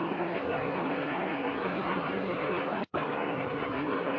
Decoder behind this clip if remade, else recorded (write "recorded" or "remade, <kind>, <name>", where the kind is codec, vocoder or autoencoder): remade, codec, SNAC